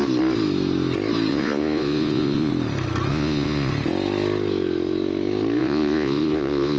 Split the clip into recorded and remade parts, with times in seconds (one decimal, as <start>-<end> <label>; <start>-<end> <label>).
0.0-1.3 recorded; 1.3-2.5 remade; 2.5-3.1 recorded; 3.1-3.7 remade; 3.7-5.6 recorded; 5.6-6.8 remade